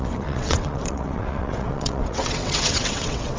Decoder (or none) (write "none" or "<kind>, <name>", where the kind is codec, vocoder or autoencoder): vocoder, WaveNeXt